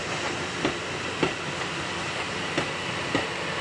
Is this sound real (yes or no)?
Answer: yes